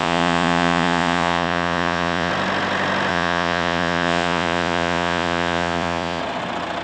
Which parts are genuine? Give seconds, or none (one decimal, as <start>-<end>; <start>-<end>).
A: 2.3-3.1; 6.2-6.8